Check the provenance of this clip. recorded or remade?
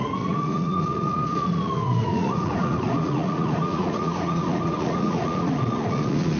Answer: remade